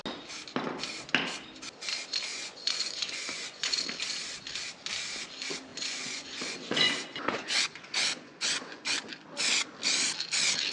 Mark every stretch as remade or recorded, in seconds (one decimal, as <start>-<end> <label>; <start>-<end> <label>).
0.0-2.3 recorded; 2.3-3.8 remade; 3.8-5.7 recorded; 5.7-9.1 remade; 9.1-10.7 recorded